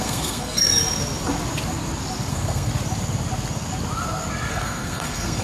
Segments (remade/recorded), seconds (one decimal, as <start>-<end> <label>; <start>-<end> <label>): 0.0-0.7 remade; 0.7-2.3 recorded; 2.3-2.7 remade; 2.7-4.5 recorded; 4.5-5.4 remade